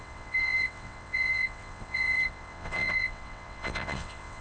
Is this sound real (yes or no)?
no